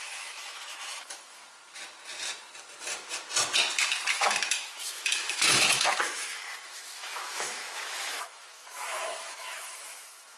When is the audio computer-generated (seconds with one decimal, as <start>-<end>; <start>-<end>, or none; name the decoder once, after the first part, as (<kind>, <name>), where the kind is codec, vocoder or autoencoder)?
0.0-1.4 (autoencoder, DAC-VAE); 4.1-10.4